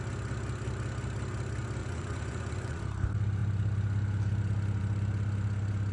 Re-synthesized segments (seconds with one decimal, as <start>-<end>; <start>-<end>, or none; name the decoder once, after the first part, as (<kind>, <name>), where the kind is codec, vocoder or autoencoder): 1.8-2.8 (vocoder, Vocos)